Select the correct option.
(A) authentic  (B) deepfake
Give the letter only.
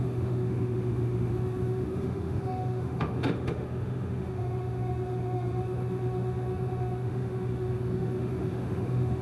B